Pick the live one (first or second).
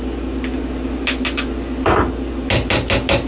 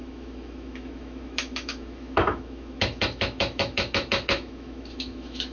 first